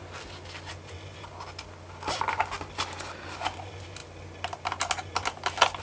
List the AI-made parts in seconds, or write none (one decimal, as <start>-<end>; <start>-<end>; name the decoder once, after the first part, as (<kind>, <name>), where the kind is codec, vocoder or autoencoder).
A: none